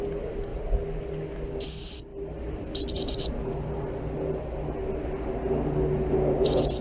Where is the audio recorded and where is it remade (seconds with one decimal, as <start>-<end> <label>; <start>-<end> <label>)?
0.0-6.8 recorded